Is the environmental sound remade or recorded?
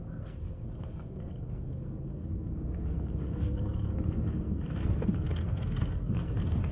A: remade